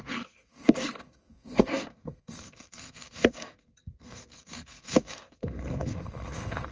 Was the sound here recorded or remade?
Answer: remade